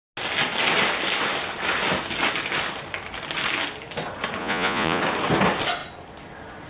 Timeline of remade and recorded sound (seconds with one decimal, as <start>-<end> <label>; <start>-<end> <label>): 0.0-4.4 recorded; 4.4-5.0 remade; 5.0-6.7 recorded